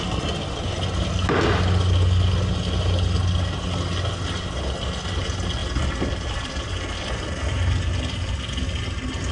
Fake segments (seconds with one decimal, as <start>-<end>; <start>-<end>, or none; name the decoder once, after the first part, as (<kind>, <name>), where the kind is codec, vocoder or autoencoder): none